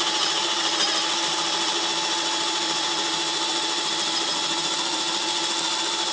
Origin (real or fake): real